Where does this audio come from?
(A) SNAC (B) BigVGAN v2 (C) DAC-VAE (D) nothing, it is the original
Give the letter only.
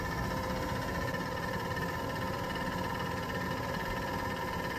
D